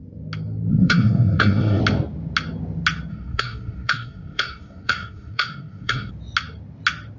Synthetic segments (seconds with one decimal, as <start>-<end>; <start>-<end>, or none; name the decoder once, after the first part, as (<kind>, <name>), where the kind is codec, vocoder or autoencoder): 0.7-1.8 (codec, SNAC); 3.1-6.1

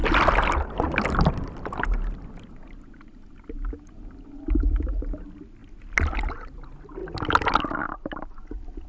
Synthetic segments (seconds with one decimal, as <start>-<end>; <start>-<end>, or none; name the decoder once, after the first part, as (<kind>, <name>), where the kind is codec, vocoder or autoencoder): none

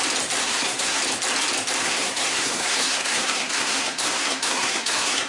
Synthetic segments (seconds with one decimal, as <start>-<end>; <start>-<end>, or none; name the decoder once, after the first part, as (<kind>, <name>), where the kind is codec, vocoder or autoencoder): 0.4-1.0 (codec, SNAC); 1.8-5.3

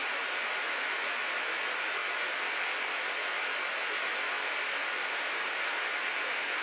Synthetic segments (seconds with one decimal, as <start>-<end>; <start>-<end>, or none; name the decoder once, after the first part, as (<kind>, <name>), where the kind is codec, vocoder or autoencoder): 0.0-2.0 (vocoder, BigVGAN v2); 5.1-6.6

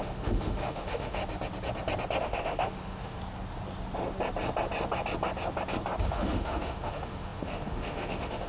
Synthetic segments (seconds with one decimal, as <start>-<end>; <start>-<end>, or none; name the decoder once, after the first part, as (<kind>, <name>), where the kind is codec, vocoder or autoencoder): 0.0-1.2 (autoencoder, DAC-VAE); 2.2-3.2; 6.0-8.5

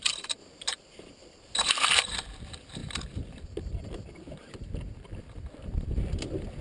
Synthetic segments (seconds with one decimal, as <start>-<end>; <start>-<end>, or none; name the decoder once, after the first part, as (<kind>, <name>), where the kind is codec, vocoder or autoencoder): 0.0-6.6 (vocoder, BigVGAN v2)